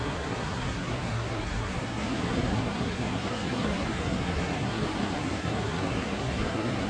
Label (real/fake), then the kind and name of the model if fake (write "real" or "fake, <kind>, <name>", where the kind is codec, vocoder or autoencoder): fake, codec, SNAC